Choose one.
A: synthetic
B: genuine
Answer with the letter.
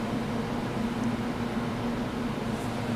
A